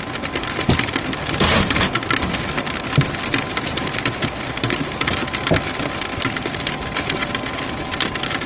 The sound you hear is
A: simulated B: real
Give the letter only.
A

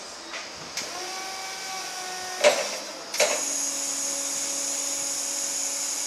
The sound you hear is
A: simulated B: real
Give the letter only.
B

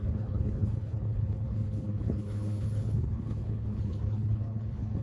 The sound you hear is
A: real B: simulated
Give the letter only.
B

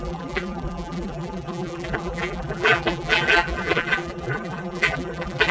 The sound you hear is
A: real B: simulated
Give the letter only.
B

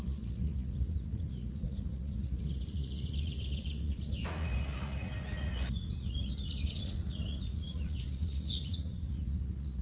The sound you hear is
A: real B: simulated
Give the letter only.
B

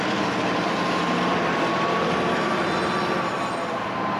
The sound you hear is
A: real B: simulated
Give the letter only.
B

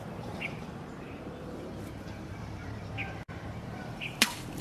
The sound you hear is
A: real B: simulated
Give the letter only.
B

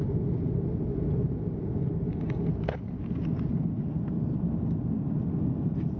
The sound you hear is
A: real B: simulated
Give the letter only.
A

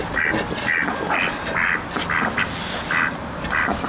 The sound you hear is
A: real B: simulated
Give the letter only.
A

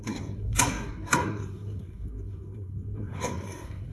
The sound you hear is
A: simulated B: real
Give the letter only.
A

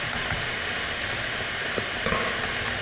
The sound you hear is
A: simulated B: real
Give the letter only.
B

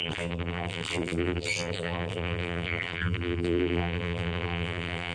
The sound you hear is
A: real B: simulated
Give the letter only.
B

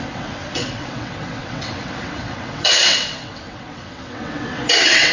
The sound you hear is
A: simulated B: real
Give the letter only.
A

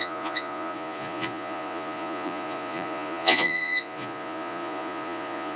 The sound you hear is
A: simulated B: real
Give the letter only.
A